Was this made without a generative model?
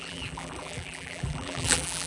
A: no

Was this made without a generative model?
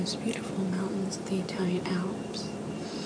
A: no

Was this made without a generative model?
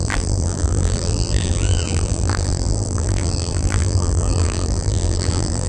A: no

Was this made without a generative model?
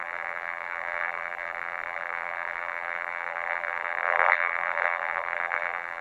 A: no